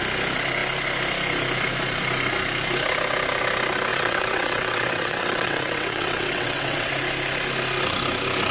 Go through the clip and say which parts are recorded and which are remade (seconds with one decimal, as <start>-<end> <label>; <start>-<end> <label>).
0.0-3.9 recorded; 3.9-6.9 remade; 6.9-8.5 recorded